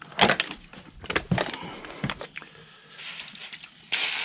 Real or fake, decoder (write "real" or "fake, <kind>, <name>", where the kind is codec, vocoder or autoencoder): real